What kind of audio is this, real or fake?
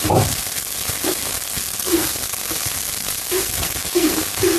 fake